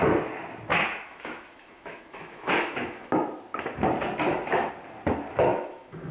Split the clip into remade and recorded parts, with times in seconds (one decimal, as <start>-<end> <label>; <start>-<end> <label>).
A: 0.0-0.7 recorded; 0.7-3.1 remade; 3.1-5.5 recorded; 5.5-6.1 remade